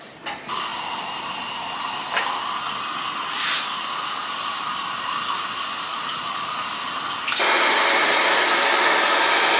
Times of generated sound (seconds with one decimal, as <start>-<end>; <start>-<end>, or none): none